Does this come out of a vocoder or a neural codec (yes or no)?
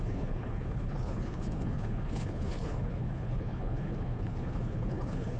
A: yes